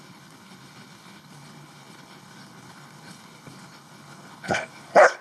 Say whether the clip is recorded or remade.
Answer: remade